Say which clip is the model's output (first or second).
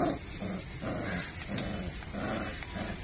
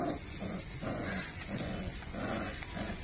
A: second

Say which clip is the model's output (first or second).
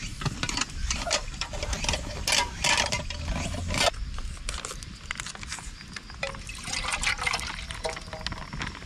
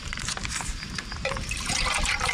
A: second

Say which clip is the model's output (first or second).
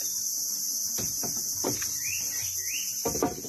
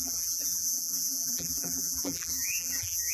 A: second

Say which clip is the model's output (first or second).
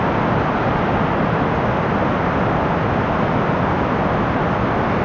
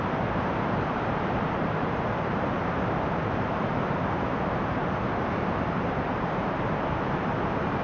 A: second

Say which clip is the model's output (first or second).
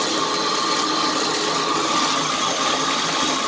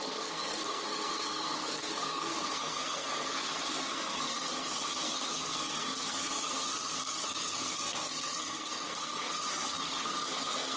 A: second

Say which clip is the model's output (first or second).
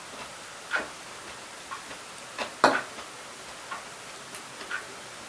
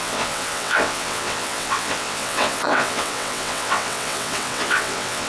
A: second